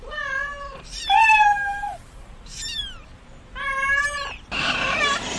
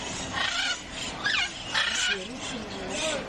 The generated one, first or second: first